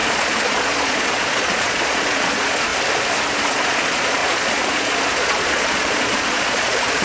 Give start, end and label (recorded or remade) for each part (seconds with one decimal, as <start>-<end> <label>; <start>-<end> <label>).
0.0-2.7 remade; 2.7-3.5 recorded; 3.5-7.0 remade